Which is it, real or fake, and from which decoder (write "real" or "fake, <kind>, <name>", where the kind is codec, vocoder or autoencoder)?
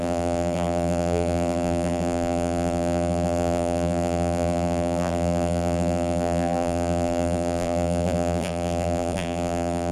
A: fake, vocoder, BigVGAN v2